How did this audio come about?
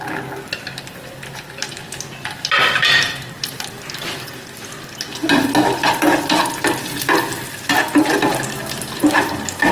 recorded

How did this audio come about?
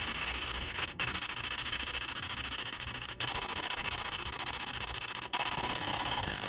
remade